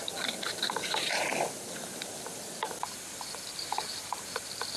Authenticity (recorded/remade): recorded